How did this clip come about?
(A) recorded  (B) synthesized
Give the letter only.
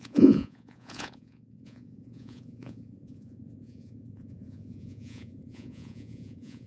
B